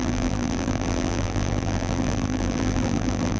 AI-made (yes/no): yes